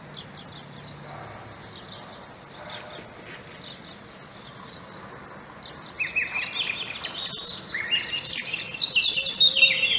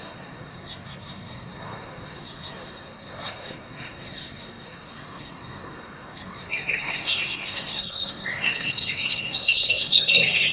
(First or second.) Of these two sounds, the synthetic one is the second